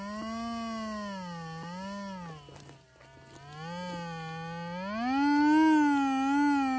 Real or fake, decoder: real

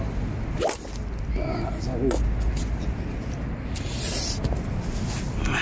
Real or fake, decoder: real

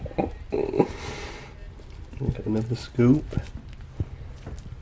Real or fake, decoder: real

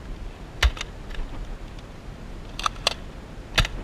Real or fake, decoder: real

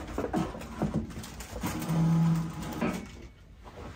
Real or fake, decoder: real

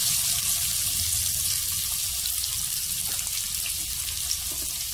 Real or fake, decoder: real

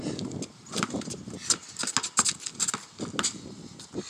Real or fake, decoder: real